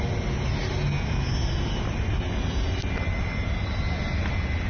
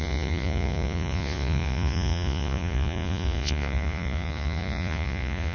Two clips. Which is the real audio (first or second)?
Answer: first